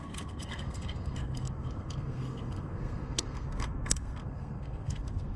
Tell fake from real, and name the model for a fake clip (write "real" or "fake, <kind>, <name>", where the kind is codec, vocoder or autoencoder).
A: fake, codec, SNAC